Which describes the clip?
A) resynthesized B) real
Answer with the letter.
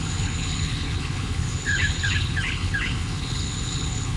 A